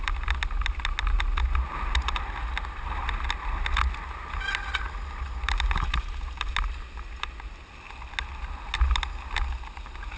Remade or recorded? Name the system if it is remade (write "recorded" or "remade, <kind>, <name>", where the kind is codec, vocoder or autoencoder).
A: recorded